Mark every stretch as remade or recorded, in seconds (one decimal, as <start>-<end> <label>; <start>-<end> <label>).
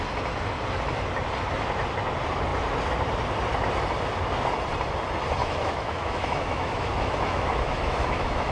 0.0-5.4 recorded; 5.4-8.5 remade